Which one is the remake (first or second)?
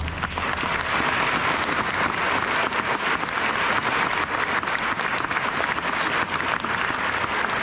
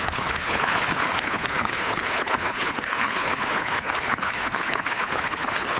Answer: second